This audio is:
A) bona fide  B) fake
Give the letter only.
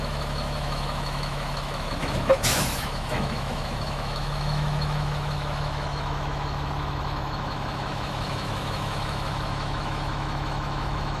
B